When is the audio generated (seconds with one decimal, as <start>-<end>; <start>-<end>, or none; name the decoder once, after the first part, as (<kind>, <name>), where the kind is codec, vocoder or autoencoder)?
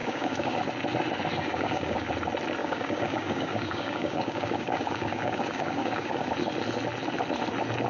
0.0-0.6 (codec, DAC); 1.5-2.1; 2.6-6.3